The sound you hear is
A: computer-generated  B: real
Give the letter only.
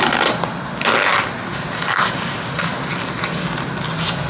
B